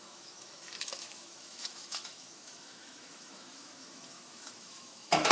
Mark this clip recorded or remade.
remade